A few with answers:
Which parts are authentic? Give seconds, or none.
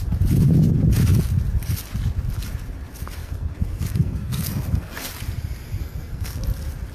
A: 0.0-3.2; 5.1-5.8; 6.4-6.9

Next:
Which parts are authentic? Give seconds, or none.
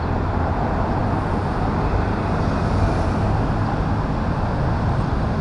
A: 0.0-5.4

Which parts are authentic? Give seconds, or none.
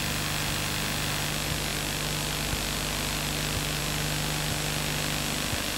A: 0.0-5.8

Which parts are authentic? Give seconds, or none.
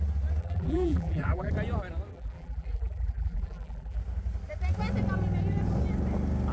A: 0.0-0.4; 1.5-2.1; 4.0-6.5